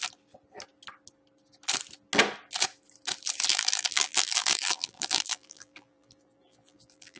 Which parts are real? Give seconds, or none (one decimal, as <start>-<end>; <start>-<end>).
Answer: 0.0-3.5